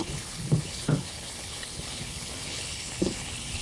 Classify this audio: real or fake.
fake